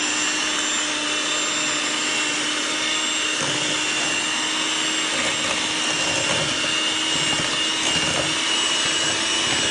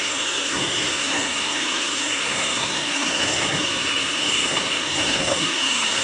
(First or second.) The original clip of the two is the first